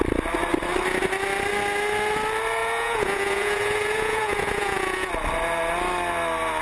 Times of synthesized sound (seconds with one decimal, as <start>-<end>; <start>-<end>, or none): 2.6-5.1